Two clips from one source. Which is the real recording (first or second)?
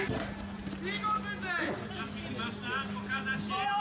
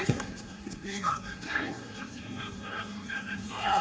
first